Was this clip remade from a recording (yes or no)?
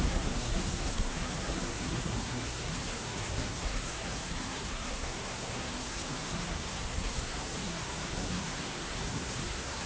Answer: yes